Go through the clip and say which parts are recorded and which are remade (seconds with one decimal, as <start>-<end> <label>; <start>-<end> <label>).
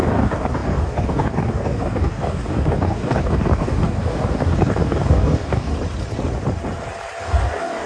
0.0-5.7 remade; 5.7-7.2 recorded; 7.2-7.9 remade